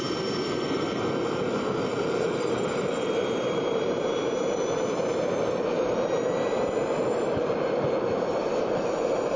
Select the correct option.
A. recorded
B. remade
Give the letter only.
B